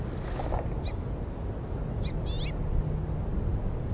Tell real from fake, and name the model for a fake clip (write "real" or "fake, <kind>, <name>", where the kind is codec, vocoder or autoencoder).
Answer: real